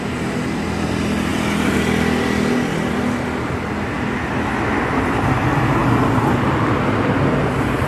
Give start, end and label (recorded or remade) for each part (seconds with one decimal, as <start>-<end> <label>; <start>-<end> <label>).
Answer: 0.0-7.9 recorded